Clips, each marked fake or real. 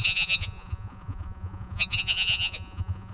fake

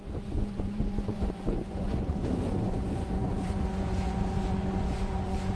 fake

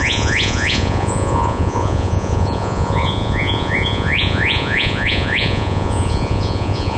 fake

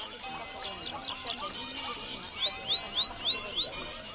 real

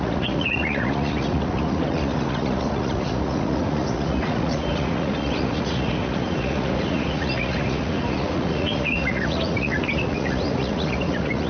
fake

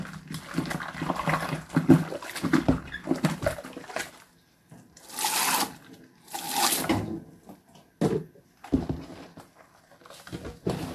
real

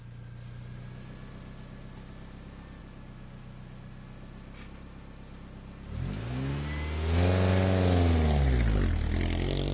real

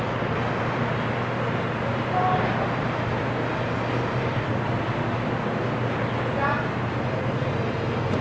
real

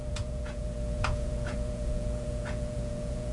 fake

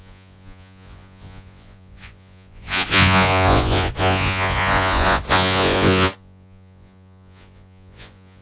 fake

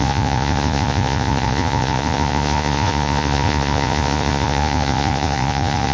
fake